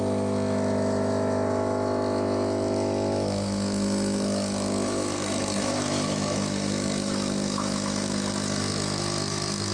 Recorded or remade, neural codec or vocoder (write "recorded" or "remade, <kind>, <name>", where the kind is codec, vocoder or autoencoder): remade, autoencoder, DAC-VAE